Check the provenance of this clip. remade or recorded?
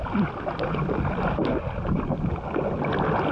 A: recorded